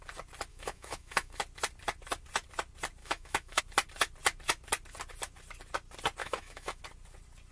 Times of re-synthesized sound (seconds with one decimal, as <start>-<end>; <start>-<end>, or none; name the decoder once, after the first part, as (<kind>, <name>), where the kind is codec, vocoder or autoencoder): 0.5-1.4 (autoencoder, DAC-VAE); 3.0-3.6; 6.2-6.8